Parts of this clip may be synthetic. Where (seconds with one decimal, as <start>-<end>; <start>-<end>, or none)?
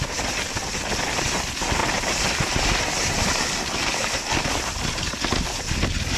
1.8-2.8